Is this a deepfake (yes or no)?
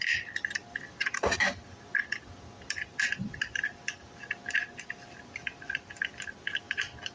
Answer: no